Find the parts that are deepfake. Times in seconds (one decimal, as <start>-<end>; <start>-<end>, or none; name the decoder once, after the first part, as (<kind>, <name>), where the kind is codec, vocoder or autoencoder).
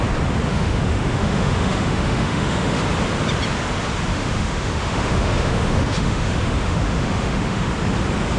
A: 0.5-2.8 (autoencoder, DAC-VAE); 4.1-7.7